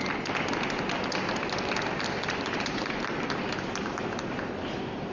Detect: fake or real real